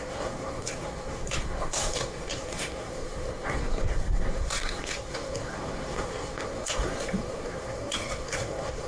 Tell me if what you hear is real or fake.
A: fake